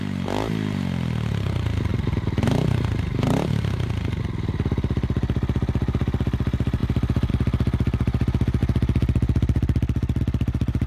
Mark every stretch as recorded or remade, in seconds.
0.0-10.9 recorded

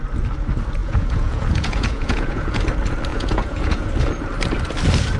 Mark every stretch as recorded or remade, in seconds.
0.0-0.8 recorded; 0.8-2.6 remade; 2.6-3.1 recorded; 3.1-3.9 remade; 3.9-5.2 recorded

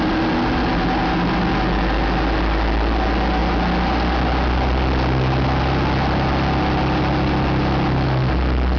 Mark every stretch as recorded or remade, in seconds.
0.0-8.8 recorded

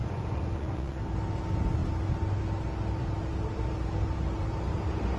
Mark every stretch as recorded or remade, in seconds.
0.0-1.0 remade; 1.0-5.2 recorded

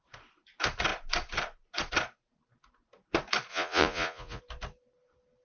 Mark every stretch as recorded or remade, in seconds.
0.0-3.5 recorded; 3.5-4.4 remade; 4.4-5.4 recorded

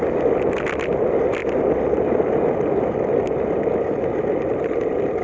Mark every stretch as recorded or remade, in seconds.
0.0-5.2 recorded

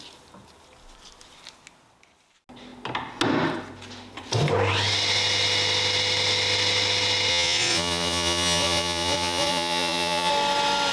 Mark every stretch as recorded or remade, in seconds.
0.0-7.3 recorded; 7.3-10.3 remade; 10.3-10.9 recorded